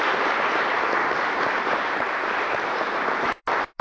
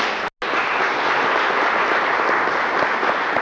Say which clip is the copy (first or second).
first